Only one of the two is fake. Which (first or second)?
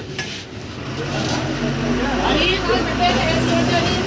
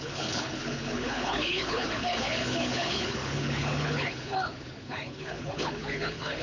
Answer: second